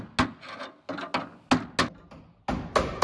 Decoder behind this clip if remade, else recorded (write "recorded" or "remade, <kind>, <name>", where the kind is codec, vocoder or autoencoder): recorded